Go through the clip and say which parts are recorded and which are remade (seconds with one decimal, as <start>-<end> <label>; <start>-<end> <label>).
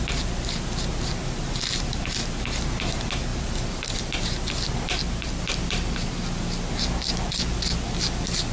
0.0-3.3 recorded; 3.3-3.9 remade; 3.9-8.5 recorded